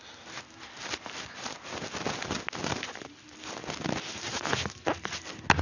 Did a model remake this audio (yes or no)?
no